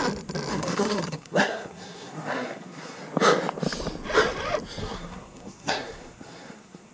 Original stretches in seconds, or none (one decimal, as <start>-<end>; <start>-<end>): 0.0-0.5; 3.0-4.8